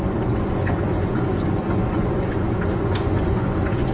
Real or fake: fake